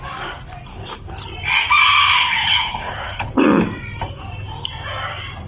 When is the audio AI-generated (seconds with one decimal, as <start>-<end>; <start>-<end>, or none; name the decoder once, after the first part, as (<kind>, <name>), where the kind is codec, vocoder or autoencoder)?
0.7-1.2 (codec, HILCodec); 2.2-3.3